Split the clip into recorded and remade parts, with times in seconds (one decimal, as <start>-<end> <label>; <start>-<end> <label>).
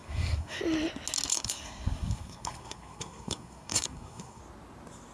0.0-0.6 remade; 0.6-1.3 recorded; 1.3-4.4 remade; 4.4-5.1 recorded